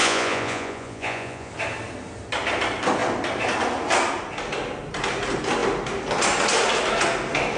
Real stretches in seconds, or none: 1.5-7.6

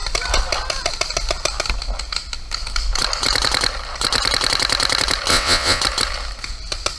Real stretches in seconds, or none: 0.0-5.3; 5.8-7.0

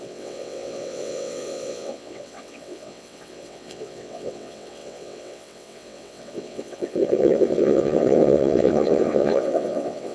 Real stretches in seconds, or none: none